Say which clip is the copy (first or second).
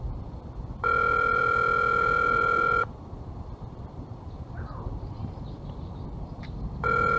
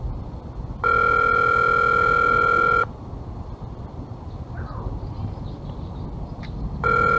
first